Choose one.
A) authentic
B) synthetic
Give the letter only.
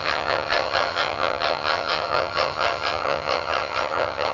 B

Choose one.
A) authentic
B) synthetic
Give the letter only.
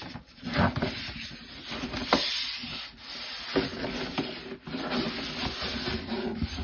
A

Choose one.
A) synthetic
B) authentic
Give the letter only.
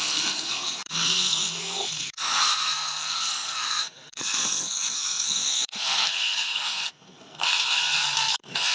A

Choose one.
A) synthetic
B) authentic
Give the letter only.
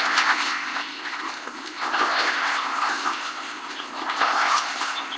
A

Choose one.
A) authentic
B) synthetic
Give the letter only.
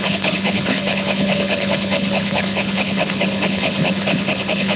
B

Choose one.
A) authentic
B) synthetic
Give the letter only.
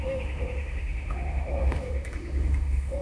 B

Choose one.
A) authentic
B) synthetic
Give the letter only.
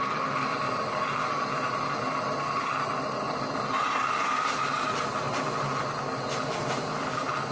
A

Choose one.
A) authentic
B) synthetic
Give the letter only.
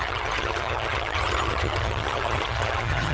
B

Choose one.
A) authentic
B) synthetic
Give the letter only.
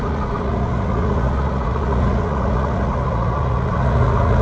B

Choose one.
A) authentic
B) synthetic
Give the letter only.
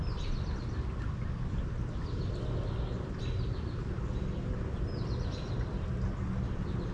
A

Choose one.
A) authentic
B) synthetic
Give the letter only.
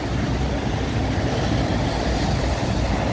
A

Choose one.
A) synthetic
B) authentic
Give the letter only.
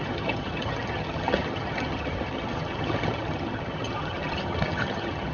A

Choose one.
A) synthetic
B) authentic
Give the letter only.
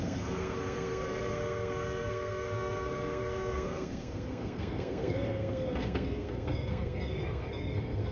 A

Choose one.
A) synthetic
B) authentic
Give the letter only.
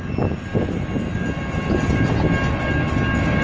B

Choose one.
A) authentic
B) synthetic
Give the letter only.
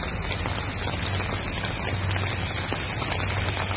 A